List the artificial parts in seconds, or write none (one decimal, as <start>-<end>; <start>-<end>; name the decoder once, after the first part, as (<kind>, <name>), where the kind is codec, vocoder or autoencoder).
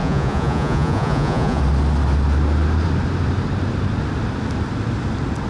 0.0-1.6 (vocoder, Vocos)